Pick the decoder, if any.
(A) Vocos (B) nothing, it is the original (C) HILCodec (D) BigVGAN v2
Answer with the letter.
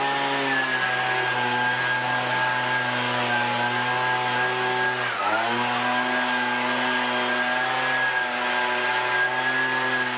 B